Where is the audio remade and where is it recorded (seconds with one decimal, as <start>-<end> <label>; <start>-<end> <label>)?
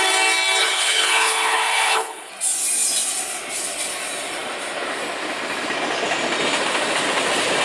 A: 0.0-0.6 recorded; 0.6-2.3 remade; 2.3-7.6 recorded